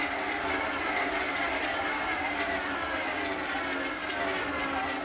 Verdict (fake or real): real